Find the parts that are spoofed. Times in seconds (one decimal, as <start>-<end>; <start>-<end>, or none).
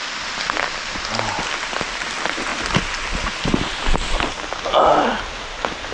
none